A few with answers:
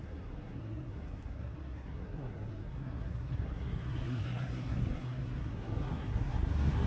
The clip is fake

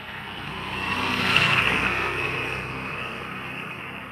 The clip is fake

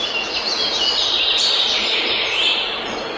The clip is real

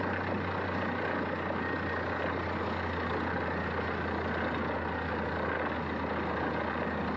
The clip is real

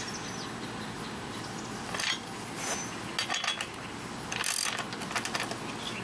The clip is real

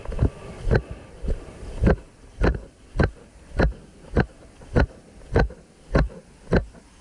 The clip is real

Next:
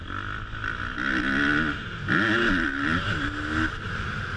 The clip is real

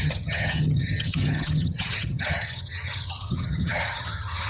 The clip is fake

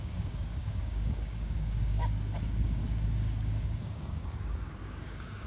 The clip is fake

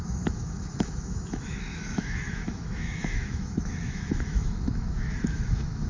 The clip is fake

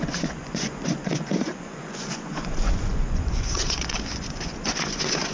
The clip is fake